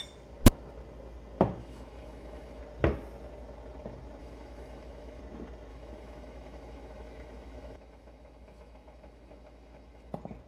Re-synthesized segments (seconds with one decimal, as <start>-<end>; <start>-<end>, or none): 1.6-2.6; 4.2-5.2; 5.7-10.1